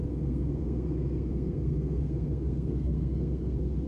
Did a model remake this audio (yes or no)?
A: yes